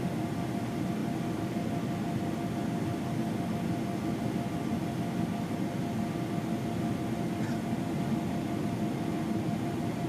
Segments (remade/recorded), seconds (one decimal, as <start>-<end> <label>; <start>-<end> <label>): 0.0-10.1 recorded